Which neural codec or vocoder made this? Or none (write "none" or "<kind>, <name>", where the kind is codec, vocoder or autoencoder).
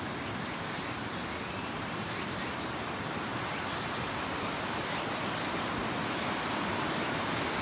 none